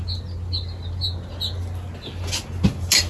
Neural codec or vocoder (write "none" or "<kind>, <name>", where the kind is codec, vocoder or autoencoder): none